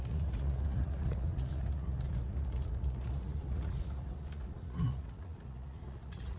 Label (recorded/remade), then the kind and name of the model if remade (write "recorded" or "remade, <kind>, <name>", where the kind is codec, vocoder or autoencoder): remade, vocoder, Vocos